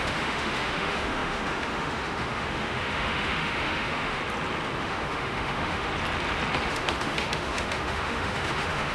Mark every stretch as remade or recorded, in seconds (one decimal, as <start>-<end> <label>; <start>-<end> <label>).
0.0-4.2 remade; 4.2-4.8 recorded; 4.8-5.9 remade; 5.9-6.7 recorded; 6.7-8.9 remade

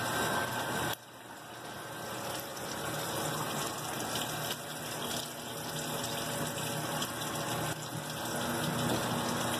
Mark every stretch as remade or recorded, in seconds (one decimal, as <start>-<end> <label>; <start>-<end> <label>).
0.0-0.4 recorded; 0.4-0.9 remade; 0.9-2.5 recorded; 2.5-3.6 remade; 3.6-9.6 recorded

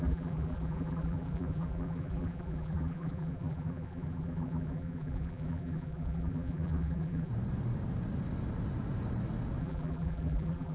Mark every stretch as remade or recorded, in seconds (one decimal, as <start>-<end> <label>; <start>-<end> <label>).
0.0-7.3 remade; 7.3-9.6 recorded; 9.6-10.7 remade

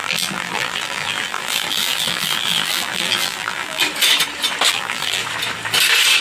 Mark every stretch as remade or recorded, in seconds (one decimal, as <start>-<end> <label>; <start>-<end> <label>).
0.0-3.8 remade; 3.8-4.7 recorded; 4.7-5.2 remade; 5.2-6.2 recorded

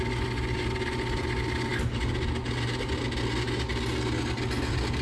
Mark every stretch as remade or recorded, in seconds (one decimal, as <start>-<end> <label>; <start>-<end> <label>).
0.0-5.0 recorded

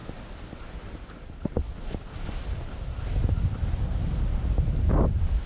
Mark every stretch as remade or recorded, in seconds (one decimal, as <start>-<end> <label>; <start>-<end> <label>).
0.0-5.5 recorded

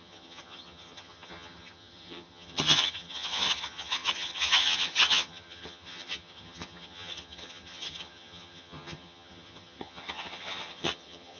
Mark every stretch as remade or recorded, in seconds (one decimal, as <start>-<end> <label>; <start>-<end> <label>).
0.0-11.4 remade